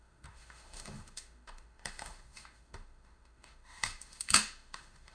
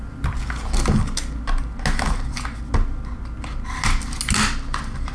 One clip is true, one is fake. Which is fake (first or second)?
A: first